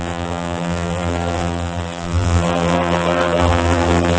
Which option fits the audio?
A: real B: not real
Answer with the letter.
B